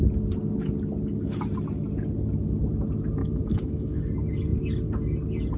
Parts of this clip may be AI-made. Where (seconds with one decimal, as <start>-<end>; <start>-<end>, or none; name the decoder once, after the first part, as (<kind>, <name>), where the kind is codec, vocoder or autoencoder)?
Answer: 3.2-4.0 (autoencoder, DAC-VAE)